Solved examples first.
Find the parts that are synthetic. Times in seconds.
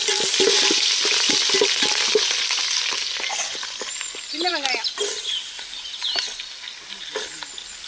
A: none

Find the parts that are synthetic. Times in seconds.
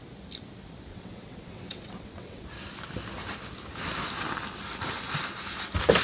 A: 0.9-2.4 (vocoder, WaveNeXt)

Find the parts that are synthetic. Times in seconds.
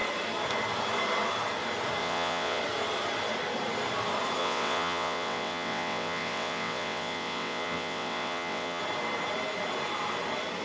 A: 2.0-2.6 (vocoder, WaveNeXt); 4.4-8.8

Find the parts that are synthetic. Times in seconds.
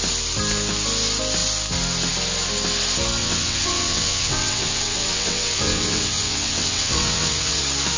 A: 3.2-7.6 (vocoder, WaveNeXt)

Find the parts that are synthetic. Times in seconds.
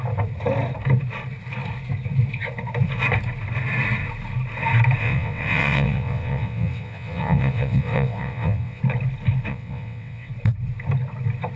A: 5.0-8.8 (vocoder, WaveNeXt); 9.5-10.3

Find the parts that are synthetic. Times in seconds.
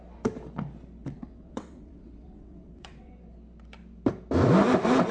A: 1.0-3.1 (vocoder, WaveNeXt)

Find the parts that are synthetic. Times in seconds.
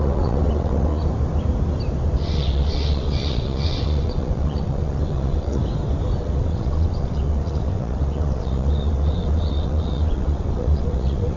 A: 0.0-1.0 (vocoder, WaveNeXt); 2.2-5.6; 6.2-11.4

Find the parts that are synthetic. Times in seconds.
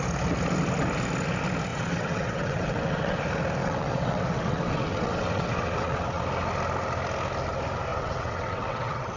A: 1.7-3.2 (vocoder, WaveNeXt); 3.6-6.2; 7.9-9.2